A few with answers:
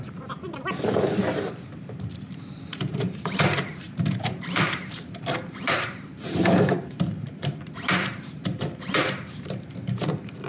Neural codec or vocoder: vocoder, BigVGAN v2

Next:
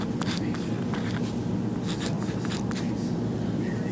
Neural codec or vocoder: none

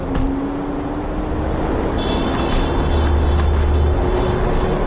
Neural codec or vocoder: none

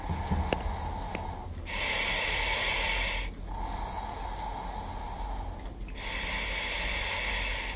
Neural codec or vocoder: none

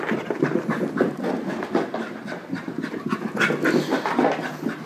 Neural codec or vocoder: none